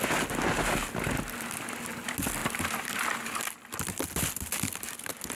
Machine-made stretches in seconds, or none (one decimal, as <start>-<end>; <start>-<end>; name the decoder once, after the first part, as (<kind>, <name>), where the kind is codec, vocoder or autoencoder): none